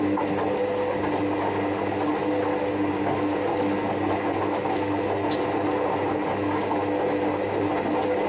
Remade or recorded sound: recorded